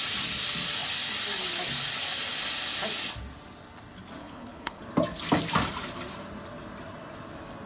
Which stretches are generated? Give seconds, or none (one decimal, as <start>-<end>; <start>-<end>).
4.2-4.8